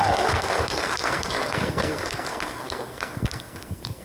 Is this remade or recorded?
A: remade